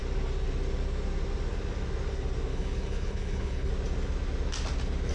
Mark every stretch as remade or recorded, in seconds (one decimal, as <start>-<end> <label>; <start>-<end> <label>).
0.0-2.5 recorded; 2.5-3.7 remade; 3.7-5.1 recorded